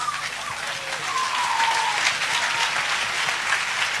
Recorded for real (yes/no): yes